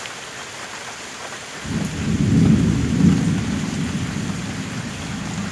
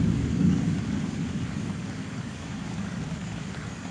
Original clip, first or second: first